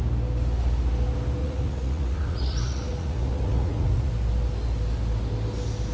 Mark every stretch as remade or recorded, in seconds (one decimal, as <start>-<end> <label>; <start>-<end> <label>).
0.0-1.4 recorded; 1.4-4.1 remade; 4.1-5.9 recorded